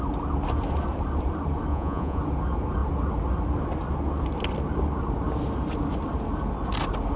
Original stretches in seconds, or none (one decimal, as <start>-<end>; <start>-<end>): 0.0-1.7; 2.2-7.2